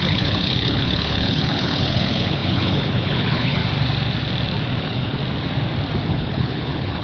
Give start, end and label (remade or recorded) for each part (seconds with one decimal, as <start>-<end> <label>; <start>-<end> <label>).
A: 0.0-3.6 remade; 3.6-4.8 recorded; 4.8-5.2 remade; 5.2-6.1 recorded; 6.1-7.0 remade